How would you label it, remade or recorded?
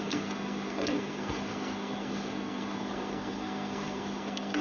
remade